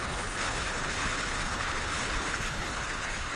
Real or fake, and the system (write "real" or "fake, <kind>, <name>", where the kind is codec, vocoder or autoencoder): fake, codec, HILCodec